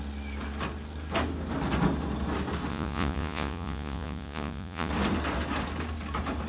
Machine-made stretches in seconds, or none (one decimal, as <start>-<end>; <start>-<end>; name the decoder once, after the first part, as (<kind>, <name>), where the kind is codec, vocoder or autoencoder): 2.7-4.9 (vocoder, Vocos)